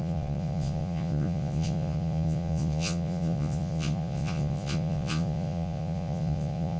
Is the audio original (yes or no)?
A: no